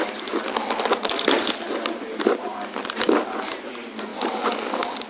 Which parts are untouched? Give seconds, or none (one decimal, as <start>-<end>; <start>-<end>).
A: 0.0-5.1